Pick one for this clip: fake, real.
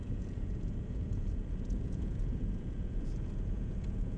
fake